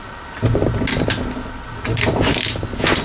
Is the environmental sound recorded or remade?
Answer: recorded